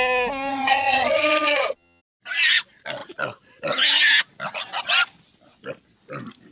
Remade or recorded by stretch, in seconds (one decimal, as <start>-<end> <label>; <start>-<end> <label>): 0.0-0.5 recorded; 0.5-2.0 remade; 2.0-6.5 recorded